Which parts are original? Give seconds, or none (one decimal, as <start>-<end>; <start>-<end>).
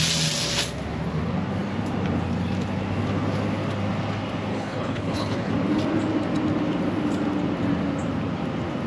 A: 0.0-4.5; 5.5-8.9